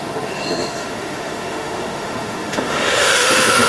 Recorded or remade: remade